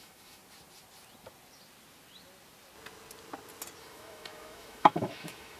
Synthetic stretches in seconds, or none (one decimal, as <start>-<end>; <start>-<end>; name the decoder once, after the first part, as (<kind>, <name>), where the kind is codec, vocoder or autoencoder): 0.0-0.4 (autoencoder, DAC-VAE); 3.8-5.6